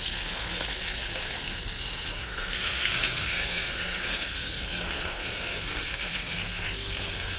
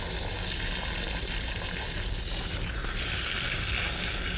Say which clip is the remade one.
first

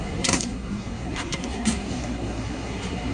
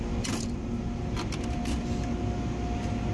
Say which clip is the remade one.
first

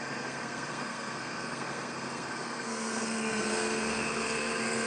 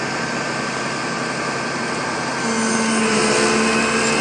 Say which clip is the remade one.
first